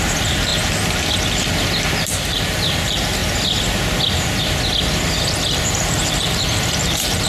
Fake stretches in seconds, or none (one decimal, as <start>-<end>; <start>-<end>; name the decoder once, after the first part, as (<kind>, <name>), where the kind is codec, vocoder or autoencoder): 0.0-0.5 (vocoder, BigVGAN v2); 2.3-3.2; 5.5-7.3

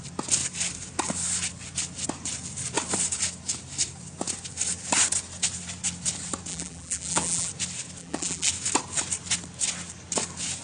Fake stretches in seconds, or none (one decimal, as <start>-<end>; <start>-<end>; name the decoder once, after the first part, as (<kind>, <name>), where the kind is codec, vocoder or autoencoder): 6.5-7.5 (vocoder, BigVGAN v2); 8.0-8.5

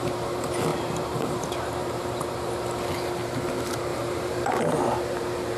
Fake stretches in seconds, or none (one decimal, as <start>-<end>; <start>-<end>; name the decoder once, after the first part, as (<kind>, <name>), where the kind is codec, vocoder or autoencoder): 0.7-2.5 (vocoder, BigVGAN v2); 3.9-4.6